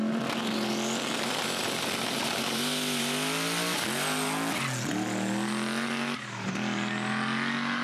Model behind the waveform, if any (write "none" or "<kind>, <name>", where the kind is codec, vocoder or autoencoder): none